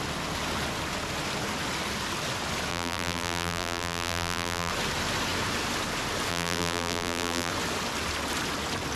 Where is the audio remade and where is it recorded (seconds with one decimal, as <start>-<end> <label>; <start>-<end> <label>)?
0.0-2.7 recorded; 2.7-4.7 remade; 4.7-6.3 recorded; 6.3-7.5 remade; 7.5-9.0 recorded